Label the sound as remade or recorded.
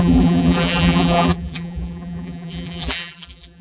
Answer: remade